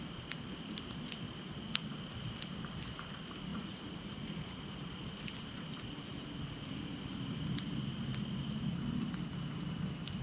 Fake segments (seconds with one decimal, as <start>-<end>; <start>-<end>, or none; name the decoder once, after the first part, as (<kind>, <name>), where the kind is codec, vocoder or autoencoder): 3.5-4.6 (vocoder, Vocos)